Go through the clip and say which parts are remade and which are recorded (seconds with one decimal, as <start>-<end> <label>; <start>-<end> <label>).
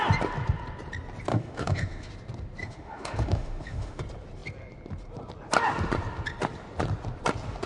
0.0-1.3 recorded; 1.3-2.1 remade; 2.1-2.6 recorded; 2.6-4.0 remade; 4.0-7.7 recorded